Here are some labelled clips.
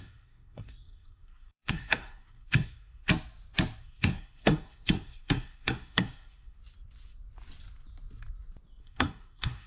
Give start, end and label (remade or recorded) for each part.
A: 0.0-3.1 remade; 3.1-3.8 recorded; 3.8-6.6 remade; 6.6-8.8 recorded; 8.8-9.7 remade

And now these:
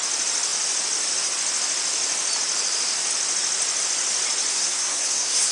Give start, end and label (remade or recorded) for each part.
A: 0.0-4.5 recorded; 4.5-5.5 remade